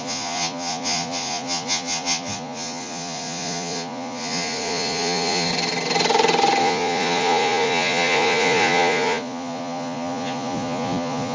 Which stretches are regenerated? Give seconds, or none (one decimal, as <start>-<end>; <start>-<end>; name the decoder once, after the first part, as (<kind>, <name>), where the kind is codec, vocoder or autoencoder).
0.0-5.5 (vocoder, Vocos); 6.6-11.3